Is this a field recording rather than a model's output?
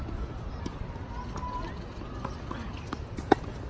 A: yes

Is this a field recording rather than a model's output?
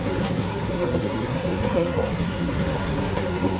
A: no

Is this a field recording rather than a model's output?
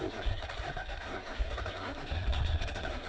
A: no